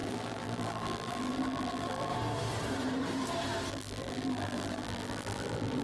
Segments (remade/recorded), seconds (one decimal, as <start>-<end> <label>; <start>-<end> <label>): 0.0-2.1 remade; 2.1-3.7 recorded; 3.7-5.8 remade